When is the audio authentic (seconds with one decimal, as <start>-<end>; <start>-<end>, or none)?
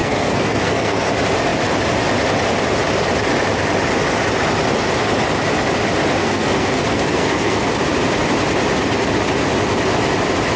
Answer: 1.1-6.2; 7.7-10.6